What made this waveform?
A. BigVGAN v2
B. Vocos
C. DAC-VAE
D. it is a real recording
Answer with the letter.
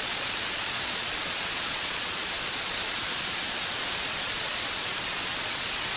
B